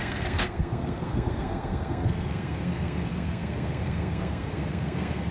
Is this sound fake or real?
fake